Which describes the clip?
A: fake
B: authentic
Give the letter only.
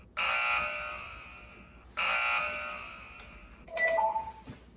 B